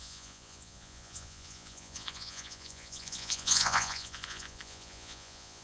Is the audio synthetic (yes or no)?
yes